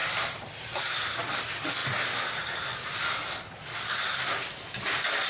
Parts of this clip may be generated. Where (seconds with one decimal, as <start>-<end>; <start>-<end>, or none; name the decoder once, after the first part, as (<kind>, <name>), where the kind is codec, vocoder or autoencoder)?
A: 0.0-0.8 (vocoder, BigVGAN v2)